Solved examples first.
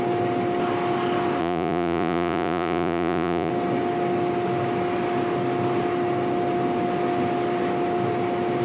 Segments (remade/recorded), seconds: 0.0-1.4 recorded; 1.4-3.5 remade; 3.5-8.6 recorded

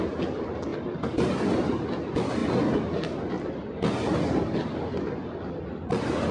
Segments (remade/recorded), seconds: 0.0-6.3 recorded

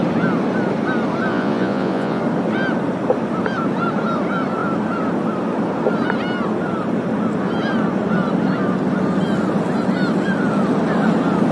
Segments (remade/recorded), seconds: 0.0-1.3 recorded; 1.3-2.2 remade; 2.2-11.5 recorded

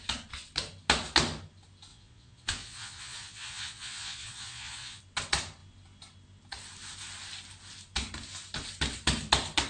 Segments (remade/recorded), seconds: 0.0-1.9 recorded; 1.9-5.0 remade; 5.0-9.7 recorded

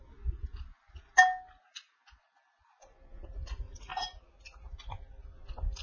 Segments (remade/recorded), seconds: 0.0-3.5 recorded; 3.5-3.9 remade; 3.9-5.8 recorded